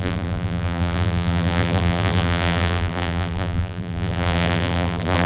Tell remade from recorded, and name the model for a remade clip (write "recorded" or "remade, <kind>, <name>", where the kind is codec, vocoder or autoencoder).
remade, vocoder, BigVGAN v2